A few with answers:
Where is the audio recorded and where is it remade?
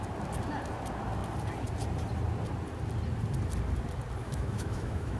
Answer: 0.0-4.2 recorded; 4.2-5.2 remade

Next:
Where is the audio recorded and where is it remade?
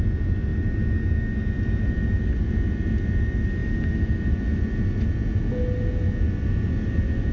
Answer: 0.0-7.3 recorded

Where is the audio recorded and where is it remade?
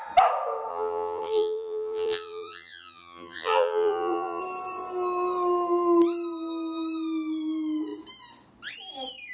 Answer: 0.0-0.7 recorded; 0.7-4.4 remade; 4.4-9.3 recorded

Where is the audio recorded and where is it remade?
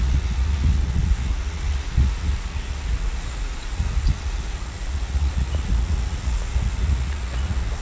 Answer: 0.0-7.8 remade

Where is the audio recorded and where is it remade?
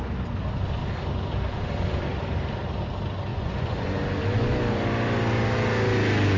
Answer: 0.0-3.3 recorded; 3.3-4.0 remade; 4.0-6.4 recorded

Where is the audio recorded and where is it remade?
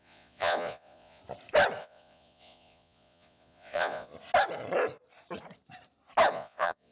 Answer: 0.0-1.2 remade; 1.2-1.8 recorded; 1.8-4.1 remade; 4.1-6.3 recorded; 6.3-6.9 remade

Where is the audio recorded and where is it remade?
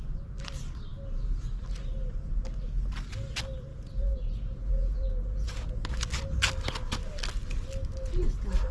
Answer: 0.0-3.7 recorded; 3.7-5.9 remade; 5.9-8.7 recorded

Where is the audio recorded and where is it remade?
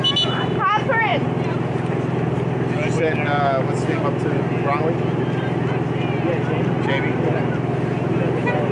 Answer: 0.0-8.7 recorded